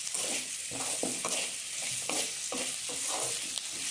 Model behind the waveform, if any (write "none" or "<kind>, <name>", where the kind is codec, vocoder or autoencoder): none